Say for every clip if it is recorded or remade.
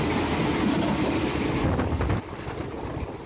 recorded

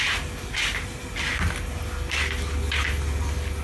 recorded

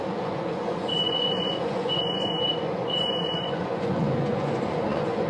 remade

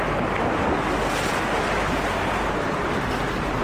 recorded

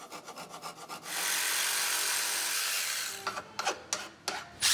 recorded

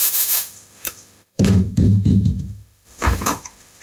remade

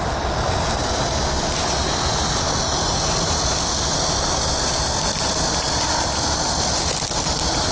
recorded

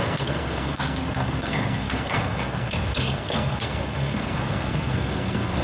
remade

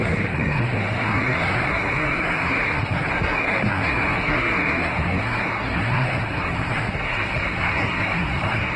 remade